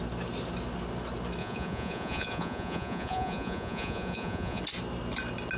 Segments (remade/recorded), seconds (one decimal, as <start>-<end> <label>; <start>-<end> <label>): 0.0-1.4 recorded; 1.4-4.6 remade; 4.6-5.6 recorded